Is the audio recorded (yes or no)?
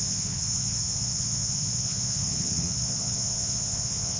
no